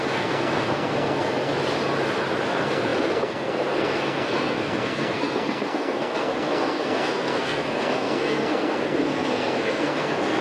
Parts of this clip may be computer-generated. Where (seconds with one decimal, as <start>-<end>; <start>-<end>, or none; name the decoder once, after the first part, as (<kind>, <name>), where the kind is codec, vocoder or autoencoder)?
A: 0.0-1.5 (codec, SNAC); 2.5-10.4